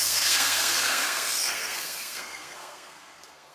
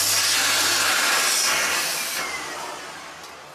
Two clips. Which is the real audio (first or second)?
second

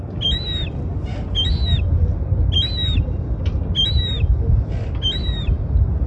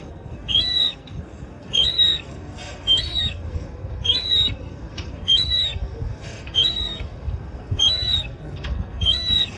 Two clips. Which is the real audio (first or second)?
first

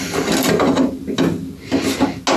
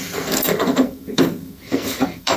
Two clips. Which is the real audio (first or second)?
first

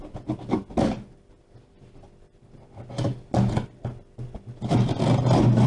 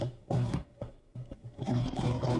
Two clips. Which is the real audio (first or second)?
first